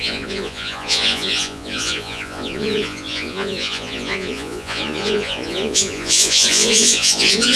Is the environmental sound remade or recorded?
remade